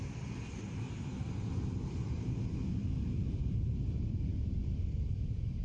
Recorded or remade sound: remade